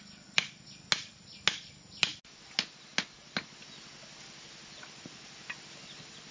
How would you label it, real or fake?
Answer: real